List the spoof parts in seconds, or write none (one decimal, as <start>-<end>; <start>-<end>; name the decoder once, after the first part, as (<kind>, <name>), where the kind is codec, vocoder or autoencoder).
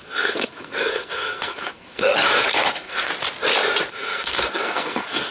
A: 0.0-3.1 (codec, SNAC); 3.9-5.3